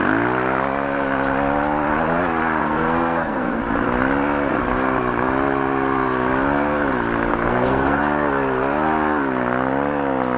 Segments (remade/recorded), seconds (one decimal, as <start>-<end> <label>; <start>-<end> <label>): 0.0-2.6 recorded; 2.6-3.6 remade; 3.6-7.3 recorded; 7.3-8.0 remade; 8.0-10.4 recorded